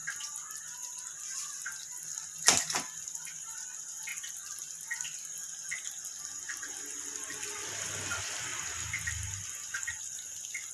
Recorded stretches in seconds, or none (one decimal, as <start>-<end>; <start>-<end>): 0.0-1.5; 4.1-6.2; 8.5-10.7